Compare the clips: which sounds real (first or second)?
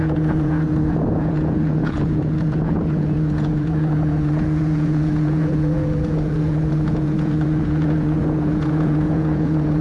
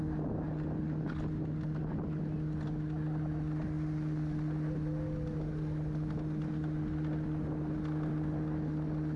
second